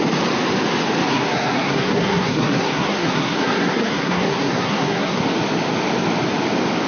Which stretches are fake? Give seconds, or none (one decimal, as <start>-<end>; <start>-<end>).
1.1-5.2